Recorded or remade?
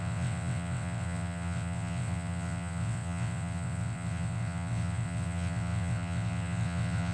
remade